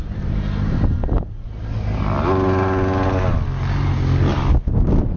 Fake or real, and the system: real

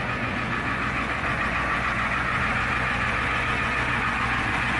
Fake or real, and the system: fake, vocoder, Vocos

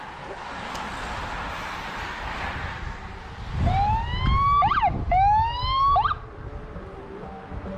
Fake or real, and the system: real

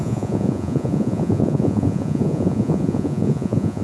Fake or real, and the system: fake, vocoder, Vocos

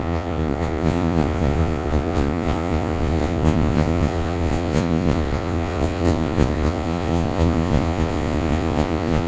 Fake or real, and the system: fake, vocoder, Vocos